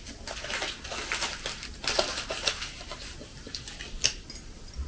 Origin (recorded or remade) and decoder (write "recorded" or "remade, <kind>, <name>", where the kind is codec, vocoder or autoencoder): recorded